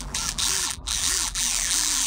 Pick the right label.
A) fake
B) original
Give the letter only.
A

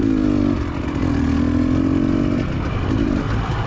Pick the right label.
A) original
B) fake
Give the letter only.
A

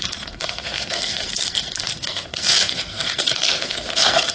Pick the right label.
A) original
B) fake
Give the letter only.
B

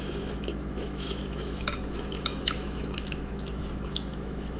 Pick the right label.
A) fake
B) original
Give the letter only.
A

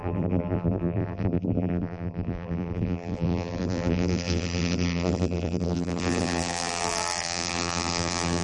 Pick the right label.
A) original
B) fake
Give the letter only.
B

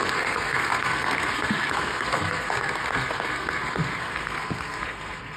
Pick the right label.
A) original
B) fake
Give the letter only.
B